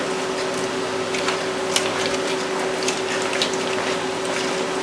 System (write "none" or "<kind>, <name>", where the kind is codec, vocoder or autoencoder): none